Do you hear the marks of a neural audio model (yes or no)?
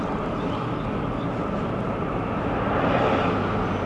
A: no